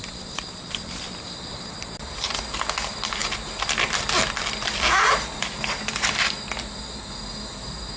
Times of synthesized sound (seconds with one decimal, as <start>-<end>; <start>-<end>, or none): none